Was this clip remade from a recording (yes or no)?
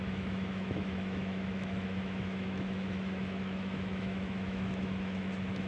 yes